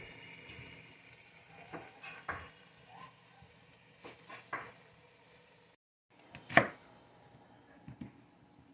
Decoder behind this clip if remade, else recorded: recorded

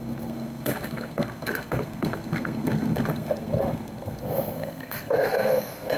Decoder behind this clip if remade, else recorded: remade, codec, SNAC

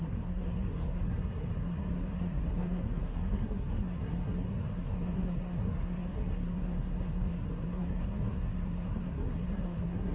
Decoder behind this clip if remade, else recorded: remade, codec, SNAC